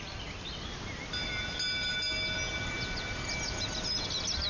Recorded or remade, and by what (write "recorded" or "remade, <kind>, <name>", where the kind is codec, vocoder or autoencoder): recorded